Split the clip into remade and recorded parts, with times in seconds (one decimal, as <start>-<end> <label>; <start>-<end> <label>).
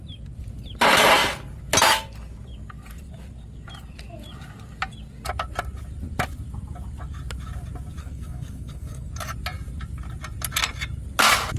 0.0-8.0 recorded; 8.0-9.1 remade; 9.1-11.6 recorded